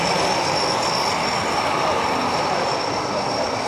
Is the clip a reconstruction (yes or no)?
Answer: no